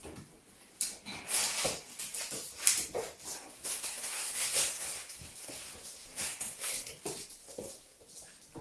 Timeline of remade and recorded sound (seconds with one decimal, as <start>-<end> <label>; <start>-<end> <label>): 0.0-3.3 recorded; 3.3-6.9 remade; 6.9-7.4 recorded; 7.4-8.0 remade; 8.0-8.6 recorded